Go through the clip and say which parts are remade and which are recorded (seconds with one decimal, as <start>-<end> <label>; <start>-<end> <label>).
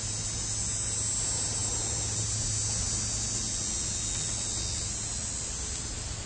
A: 0.0-6.3 recorded